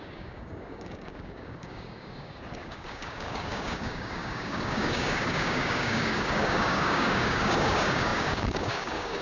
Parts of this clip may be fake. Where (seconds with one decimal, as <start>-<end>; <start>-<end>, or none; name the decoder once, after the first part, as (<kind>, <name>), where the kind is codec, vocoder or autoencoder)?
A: 0.0-9.2 (codec, DAC)